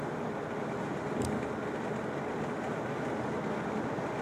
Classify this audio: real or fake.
real